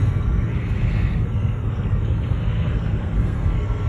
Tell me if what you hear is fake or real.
fake